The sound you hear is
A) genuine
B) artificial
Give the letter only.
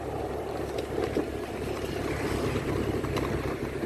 A